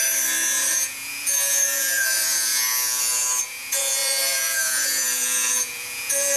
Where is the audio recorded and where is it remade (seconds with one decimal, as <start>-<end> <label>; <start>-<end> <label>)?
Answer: 0.0-0.7 recorded; 0.7-6.4 remade